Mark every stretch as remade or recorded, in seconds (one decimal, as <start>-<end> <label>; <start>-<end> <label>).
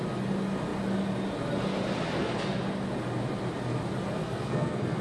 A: 0.0-4.2 recorded; 4.2-5.0 remade